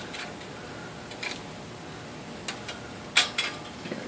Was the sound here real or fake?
real